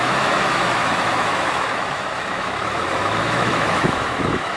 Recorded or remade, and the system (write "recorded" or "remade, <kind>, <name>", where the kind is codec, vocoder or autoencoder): remade, autoencoder, DAC-VAE